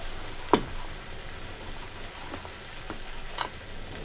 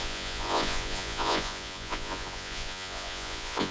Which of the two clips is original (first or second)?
first